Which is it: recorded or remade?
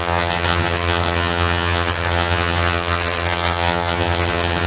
remade